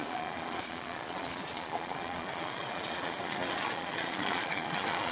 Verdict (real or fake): fake